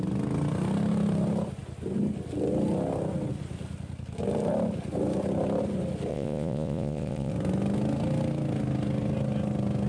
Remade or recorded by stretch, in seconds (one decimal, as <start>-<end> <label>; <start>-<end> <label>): 0.0-6.1 recorded; 6.1-7.3 remade; 7.3-9.9 recorded

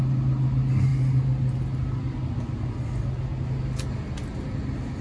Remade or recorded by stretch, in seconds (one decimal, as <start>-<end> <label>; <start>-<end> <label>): 0.0-5.0 recorded

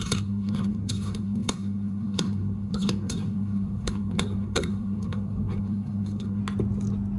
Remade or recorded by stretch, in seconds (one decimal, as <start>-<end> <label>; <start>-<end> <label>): 0.0-6.4 remade; 6.4-7.2 recorded

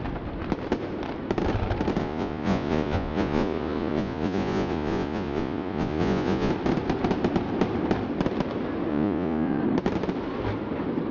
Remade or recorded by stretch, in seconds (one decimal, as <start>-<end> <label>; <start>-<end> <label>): 0.0-2.0 recorded; 2.0-6.5 remade; 6.5-8.9 recorded; 8.9-9.6 remade; 9.6-11.1 recorded

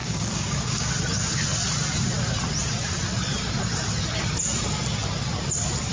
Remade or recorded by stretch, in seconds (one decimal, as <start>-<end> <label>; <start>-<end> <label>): 0.0-0.9 remade; 0.9-5.9 recorded

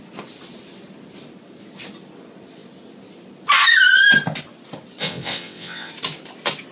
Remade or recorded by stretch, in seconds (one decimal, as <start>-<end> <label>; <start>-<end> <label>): 0.0-5.0 recorded; 5.0-5.9 remade; 5.9-6.7 recorded